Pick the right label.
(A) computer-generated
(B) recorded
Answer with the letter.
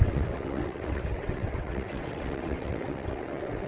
A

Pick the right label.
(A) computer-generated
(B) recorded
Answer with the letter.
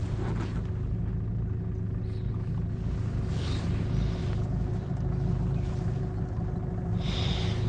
B